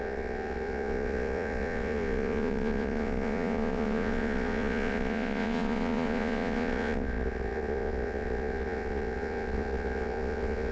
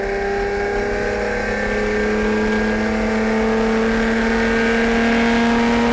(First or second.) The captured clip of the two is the second